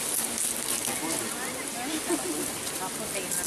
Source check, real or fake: real